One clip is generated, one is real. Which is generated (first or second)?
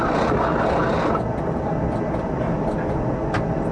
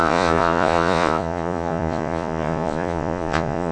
second